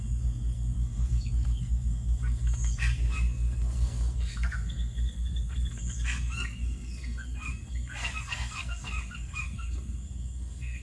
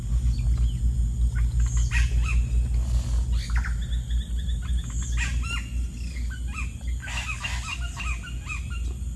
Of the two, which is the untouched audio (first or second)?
second